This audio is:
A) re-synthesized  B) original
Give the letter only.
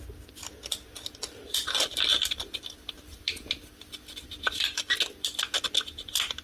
B